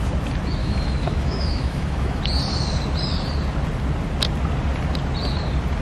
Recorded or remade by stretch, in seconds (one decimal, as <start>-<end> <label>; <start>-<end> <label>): 0.0-0.6 recorded; 0.6-2.2 remade; 2.2-5.8 recorded